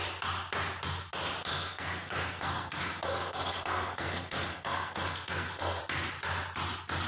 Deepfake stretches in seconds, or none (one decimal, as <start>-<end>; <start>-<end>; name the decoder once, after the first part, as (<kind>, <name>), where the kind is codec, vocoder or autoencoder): 1.5-5.8 (codec, SNAC)